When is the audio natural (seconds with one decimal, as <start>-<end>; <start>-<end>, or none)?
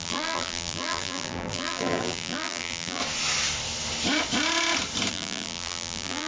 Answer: 3.0-5.1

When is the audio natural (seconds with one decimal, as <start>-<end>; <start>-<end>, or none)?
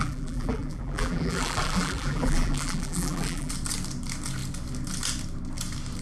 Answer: 3.5-6.0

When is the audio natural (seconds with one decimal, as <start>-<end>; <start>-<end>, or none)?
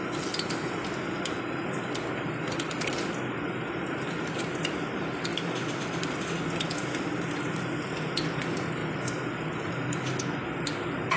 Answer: 0.0-11.2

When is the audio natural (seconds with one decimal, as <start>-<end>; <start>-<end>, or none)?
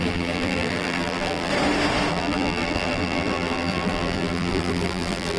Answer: 1.5-2.1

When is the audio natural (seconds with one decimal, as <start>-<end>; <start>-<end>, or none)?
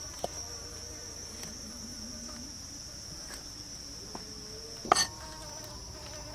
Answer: 0.0-6.3